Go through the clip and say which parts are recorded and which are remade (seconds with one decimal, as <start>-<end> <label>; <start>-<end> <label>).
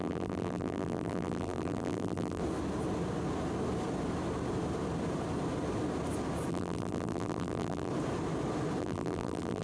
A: 0.0-2.4 remade; 2.4-6.5 recorded; 6.5-7.9 remade; 7.9-8.8 recorded; 8.8-9.6 remade